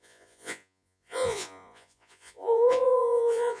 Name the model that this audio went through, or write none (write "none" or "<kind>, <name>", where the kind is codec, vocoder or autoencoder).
vocoder, Vocos